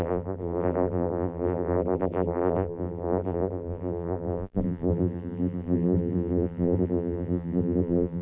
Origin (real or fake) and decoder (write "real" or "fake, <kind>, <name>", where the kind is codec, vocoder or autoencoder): fake, vocoder, BigVGAN v2